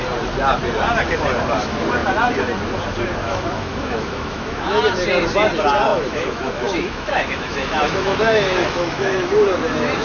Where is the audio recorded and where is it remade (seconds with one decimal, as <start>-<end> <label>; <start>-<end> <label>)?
0.0-3.2 recorded; 3.2-4.8 remade; 4.8-5.9 recorded; 5.9-9.3 remade; 9.3-10.0 recorded